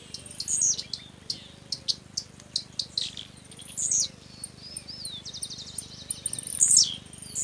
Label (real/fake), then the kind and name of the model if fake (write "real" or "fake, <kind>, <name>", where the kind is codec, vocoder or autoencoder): real